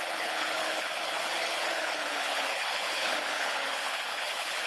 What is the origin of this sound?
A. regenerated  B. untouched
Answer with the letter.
A